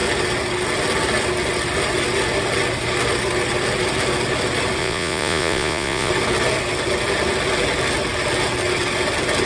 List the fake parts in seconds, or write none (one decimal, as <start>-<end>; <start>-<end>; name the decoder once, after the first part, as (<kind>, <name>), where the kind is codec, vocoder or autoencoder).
4.8-6.1 (vocoder, Vocos)